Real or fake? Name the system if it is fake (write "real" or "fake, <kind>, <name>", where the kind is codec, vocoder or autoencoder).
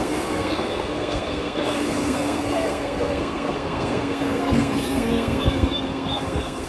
fake, codec, SNAC